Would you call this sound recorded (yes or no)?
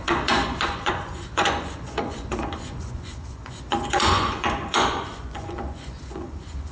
no